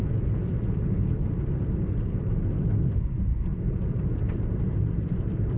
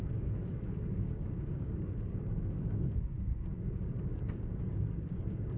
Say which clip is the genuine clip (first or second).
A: first